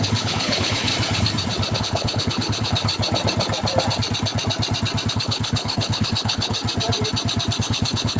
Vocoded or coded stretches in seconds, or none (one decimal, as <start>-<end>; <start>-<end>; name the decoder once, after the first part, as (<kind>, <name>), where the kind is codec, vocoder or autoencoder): 0.0-0.9 (codec, HILCodec); 1.8-2.9; 5.1-6.6; 7.6-8.2